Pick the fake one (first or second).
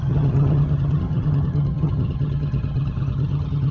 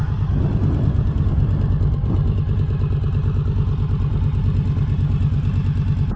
first